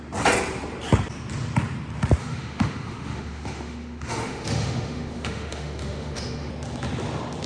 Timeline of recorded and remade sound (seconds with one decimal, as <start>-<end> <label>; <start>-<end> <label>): 0.0-2.2 recorded; 2.2-6.5 remade; 6.5-7.5 recorded